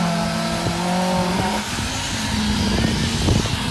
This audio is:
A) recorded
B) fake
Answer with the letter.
A